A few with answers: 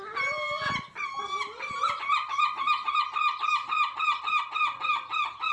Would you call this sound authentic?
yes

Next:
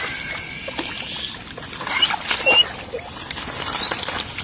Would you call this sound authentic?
yes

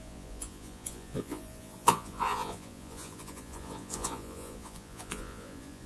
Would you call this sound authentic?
no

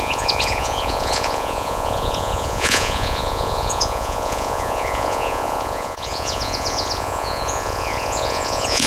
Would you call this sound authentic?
no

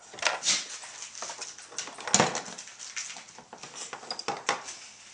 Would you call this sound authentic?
yes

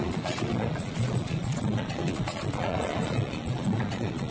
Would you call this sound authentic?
no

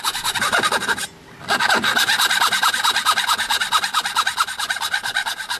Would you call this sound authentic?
yes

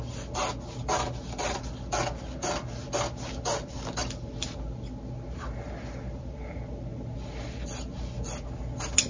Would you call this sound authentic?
yes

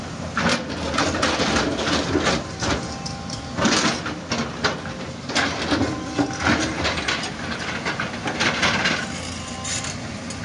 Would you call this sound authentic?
yes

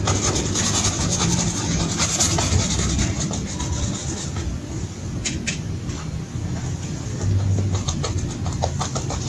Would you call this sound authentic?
yes